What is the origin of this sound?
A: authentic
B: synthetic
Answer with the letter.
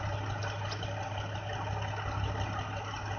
A